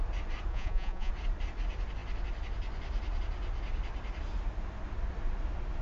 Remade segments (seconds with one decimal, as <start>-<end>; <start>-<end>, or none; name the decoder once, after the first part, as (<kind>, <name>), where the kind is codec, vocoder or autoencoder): 0.5-1.1 (vocoder, Vocos)